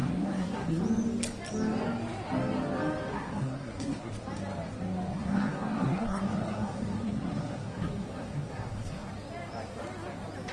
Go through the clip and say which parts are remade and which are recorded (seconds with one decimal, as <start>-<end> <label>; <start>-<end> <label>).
0.0-0.8 remade; 0.8-3.1 recorded; 3.1-4.1 remade; 4.1-5.1 recorded; 5.1-9.1 remade; 9.1-10.5 recorded